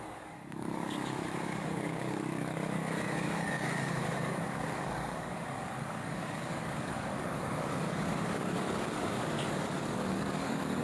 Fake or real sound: fake